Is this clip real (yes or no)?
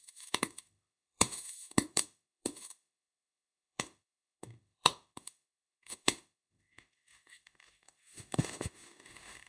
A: no